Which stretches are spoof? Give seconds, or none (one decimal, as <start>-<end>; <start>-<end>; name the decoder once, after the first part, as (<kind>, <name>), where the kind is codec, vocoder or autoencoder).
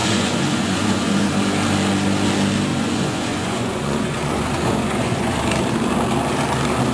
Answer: 0.0-1.3 (vocoder, Vocos); 2.7-5.4